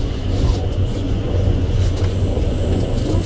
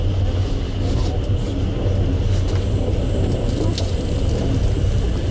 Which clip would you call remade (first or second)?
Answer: first